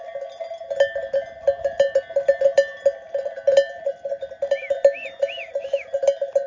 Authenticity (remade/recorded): recorded